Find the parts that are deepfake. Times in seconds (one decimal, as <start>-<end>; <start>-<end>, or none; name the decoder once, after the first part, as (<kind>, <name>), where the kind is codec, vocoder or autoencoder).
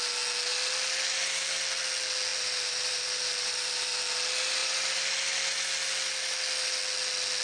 2.3-4.0 (vocoder, BigVGAN v2); 4.6-5.1